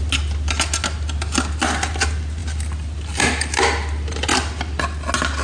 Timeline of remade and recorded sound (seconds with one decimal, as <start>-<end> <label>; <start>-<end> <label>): 0.0-5.4 recorded